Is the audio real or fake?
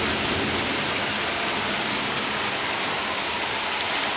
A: real